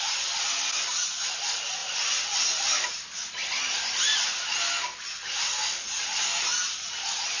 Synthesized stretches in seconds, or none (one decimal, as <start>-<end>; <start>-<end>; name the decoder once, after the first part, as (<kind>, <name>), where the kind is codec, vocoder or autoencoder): none